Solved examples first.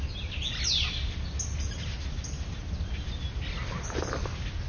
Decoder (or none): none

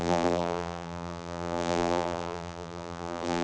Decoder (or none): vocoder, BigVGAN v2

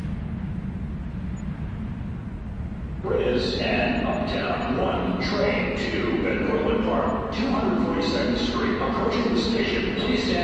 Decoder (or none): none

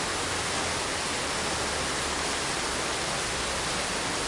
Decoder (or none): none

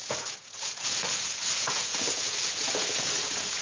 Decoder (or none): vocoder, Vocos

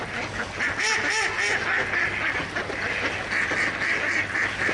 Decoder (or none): none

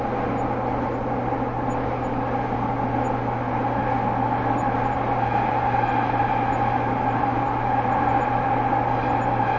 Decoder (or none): none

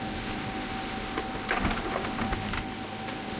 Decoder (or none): none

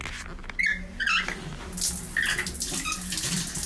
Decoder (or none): none